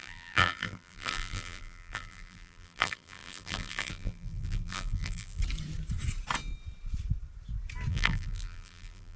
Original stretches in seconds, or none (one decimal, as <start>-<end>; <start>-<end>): 5.4-7.9